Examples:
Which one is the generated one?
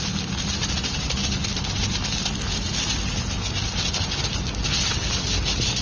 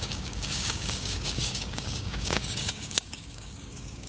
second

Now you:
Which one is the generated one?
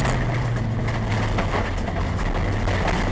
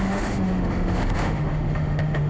second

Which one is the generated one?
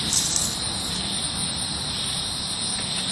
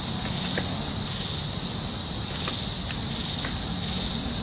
first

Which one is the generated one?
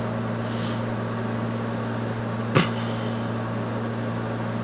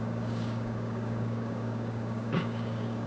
second